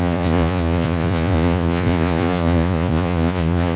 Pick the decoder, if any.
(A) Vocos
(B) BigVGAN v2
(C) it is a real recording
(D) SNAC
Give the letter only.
A